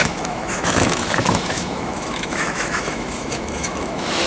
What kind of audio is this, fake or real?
fake